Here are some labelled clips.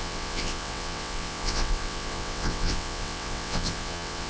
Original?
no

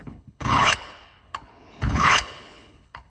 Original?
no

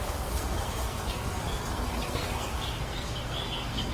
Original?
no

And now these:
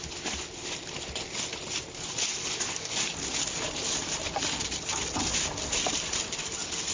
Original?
yes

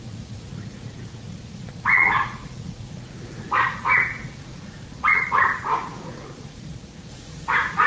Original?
no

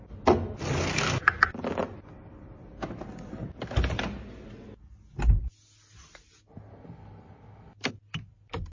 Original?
yes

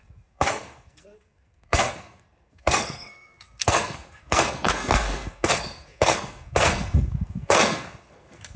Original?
no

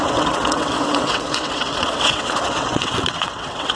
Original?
no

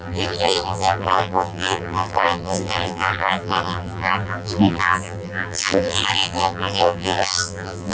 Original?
no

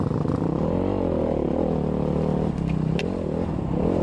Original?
yes